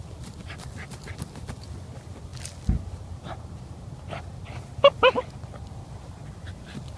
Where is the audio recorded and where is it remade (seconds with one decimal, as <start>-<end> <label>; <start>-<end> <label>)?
0.0-7.0 recorded